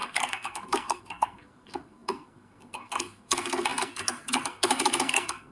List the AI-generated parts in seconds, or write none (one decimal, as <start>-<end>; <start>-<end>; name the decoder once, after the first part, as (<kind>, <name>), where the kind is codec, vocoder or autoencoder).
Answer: 0.0-5.5 (codec, SNAC)